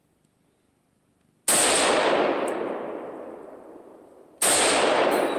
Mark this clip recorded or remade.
recorded